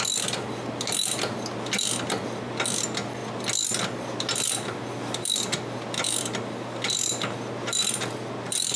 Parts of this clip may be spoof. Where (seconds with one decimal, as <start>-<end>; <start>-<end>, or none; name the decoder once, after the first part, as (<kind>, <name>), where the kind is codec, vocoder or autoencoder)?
none